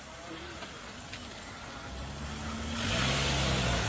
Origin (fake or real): real